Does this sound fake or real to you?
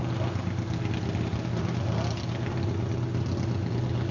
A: real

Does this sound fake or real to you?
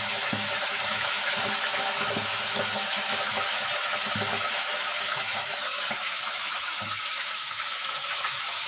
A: fake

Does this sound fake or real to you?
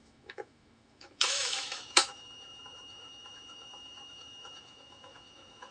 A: fake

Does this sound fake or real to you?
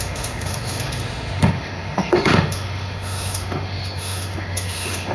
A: fake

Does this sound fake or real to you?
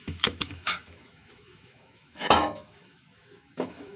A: fake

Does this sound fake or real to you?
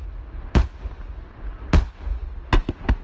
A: real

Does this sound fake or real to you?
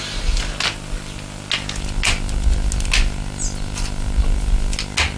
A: real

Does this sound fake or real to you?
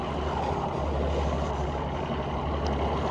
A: real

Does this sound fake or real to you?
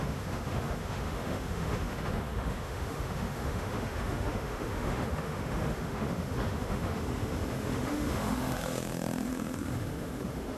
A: fake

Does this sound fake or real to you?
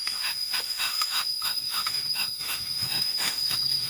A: fake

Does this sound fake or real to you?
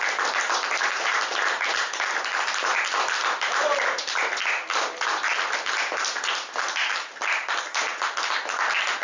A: real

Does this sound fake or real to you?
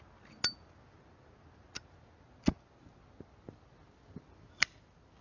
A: real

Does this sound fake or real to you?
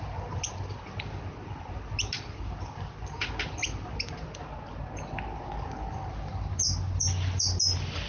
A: real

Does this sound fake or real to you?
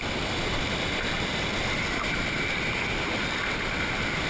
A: real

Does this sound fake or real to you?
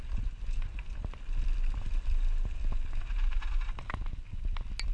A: real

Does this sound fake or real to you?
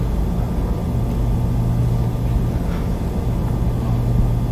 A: real